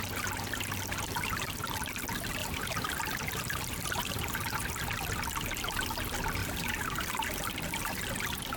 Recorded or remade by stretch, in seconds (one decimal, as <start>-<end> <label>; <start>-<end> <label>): 0.0-2.4 recorded; 2.4-4.7 remade; 4.7-6.4 recorded; 6.4-8.0 remade; 8.0-8.6 recorded

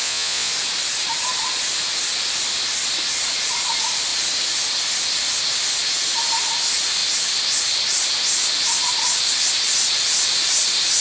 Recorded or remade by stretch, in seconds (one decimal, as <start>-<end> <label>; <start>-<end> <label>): 0.0-0.5 remade; 0.5-11.0 recorded

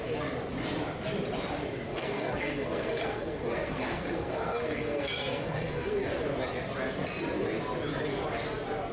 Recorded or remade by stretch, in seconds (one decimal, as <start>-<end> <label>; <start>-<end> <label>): 0.0-1.9 recorded; 1.9-6.0 remade; 6.0-8.9 recorded

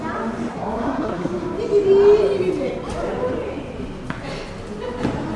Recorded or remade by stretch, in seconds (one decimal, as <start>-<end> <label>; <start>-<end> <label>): 0.0-0.5 recorded; 0.5-1.3 remade; 1.3-5.4 recorded

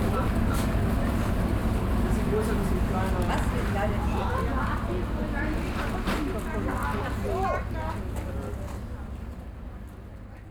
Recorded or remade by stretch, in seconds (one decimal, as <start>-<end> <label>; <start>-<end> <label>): 0.0-10.5 recorded

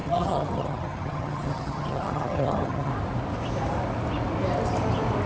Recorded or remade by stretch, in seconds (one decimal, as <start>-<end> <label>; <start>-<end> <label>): 0.0-2.9 remade; 2.9-5.3 recorded

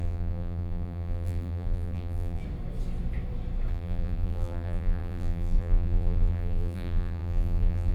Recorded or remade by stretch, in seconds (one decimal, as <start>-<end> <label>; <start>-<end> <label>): 0.0-2.4 remade; 2.4-3.7 recorded; 3.7-7.9 remade

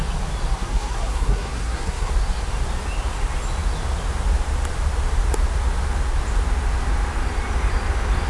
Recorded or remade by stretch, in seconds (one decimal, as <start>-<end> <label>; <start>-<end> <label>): 0.0-0.6 recorded; 0.6-2.1 remade; 2.1-8.3 recorded